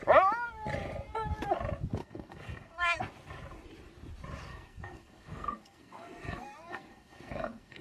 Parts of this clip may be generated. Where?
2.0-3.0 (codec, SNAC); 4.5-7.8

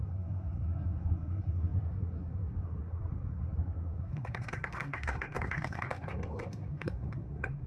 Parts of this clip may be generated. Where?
0.0-7.7 (codec, SNAC)

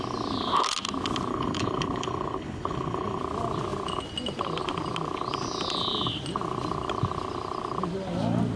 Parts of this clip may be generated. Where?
1.3-3.2 (codec, HILCodec)